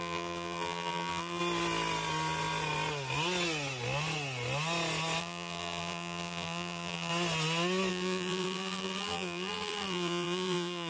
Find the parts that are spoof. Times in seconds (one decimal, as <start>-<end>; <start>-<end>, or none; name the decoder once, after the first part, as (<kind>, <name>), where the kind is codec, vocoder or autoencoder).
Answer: 0.0-1.4 (vocoder, BigVGAN v2); 5.2-7.1; 7.9-10.9